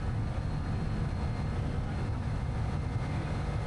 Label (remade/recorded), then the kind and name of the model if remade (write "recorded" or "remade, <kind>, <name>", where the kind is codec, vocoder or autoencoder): recorded